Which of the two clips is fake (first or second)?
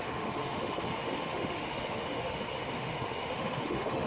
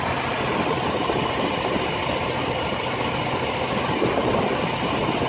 first